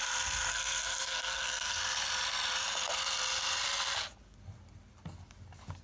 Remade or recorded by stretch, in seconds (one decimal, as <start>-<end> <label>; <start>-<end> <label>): 0.0-0.5 recorded; 0.5-1.8 remade; 1.8-5.8 recorded